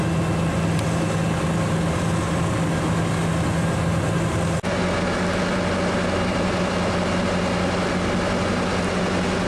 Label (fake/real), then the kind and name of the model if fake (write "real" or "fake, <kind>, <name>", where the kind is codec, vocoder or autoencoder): real